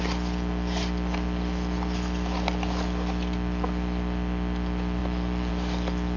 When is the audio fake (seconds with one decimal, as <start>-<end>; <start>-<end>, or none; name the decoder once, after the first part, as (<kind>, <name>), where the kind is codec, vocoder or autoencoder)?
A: 5.0-5.5 (vocoder, BigVGAN v2)